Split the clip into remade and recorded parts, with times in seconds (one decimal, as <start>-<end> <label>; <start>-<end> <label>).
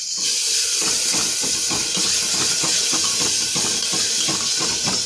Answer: 0.0-5.1 recorded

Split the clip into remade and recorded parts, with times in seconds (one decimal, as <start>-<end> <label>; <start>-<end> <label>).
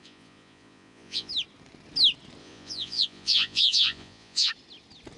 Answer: 0.0-1.3 remade; 1.3-2.4 recorded; 2.4-4.5 remade; 4.5-5.2 recorded